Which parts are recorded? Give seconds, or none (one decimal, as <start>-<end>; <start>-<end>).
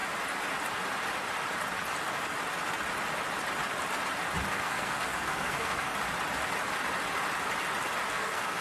0.0-4.5; 5.9-8.1